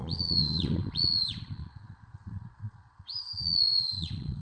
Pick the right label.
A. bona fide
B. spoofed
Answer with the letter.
B